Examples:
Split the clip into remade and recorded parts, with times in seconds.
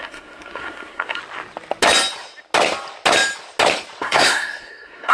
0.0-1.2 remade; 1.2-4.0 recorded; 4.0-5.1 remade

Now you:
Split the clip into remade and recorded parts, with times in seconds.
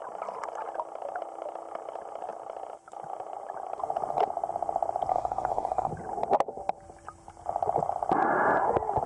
0.0-5.1 recorded; 5.1-5.9 remade; 5.9-9.1 recorded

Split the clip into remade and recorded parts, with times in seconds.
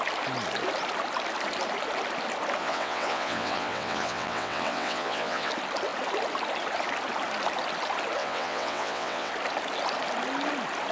0.0-2.6 recorded; 2.6-5.5 remade; 5.5-8.2 recorded; 8.2-9.3 remade; 9.3-10.9 recorded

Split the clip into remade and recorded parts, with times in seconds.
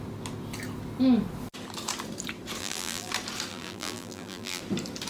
0.0-2.6 recorded; 2.6-3.1 remade; 3.1-3.5 recorded; 3.5-4.6 remade; 4.6-5.1 recorded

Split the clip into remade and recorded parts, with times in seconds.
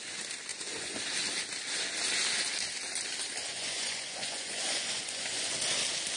0.0-0.5 recorded; 0.5-1.0 remade; 1.0-3.4 recorded; 3.4-5.5 remade; 5.5-6.2 recorded